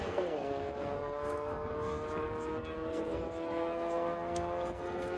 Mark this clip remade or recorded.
remade